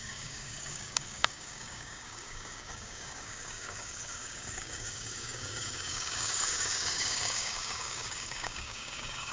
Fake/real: fake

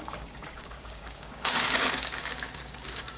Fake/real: fake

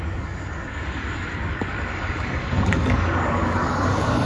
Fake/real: fake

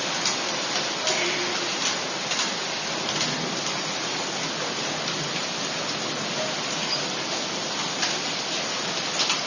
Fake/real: real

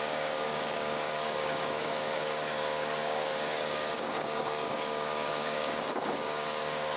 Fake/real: fake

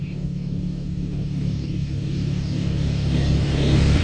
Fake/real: fake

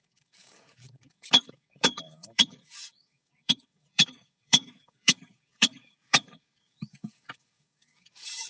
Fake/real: fake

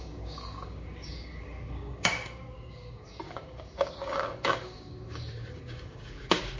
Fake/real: fake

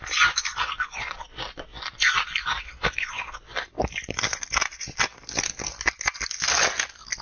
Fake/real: real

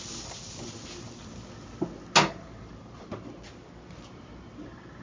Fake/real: real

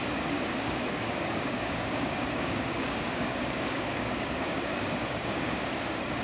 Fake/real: fake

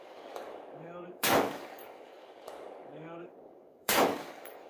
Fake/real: fake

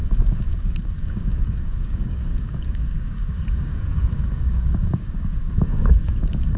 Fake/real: fake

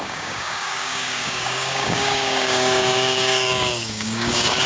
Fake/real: fake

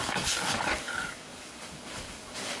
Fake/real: fake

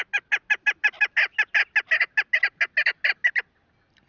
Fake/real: real